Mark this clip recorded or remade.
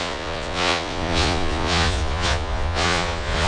remade